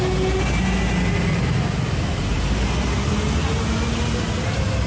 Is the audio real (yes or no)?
yes